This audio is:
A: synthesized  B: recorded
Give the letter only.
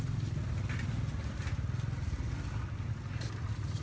B